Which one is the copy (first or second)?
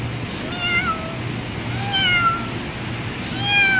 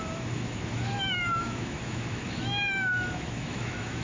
second